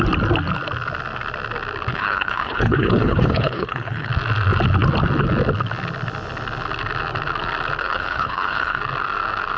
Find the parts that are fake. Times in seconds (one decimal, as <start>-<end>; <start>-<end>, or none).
1.9-4.1; 7.8-8.8